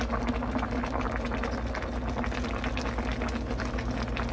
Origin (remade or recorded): recorded